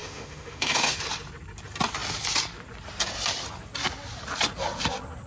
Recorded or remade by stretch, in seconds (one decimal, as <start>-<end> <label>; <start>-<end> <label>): 0.0-1.0 remade; 1.0-5.3 recorded